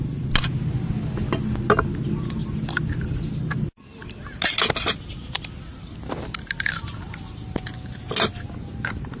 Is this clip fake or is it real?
real